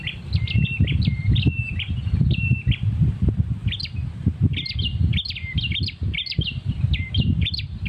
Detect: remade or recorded remade